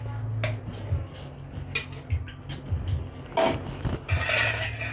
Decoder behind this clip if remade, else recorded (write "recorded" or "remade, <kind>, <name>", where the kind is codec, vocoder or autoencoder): recorded